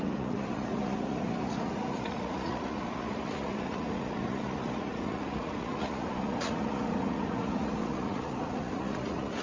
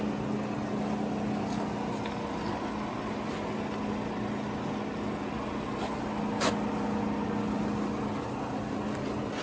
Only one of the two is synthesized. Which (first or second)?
first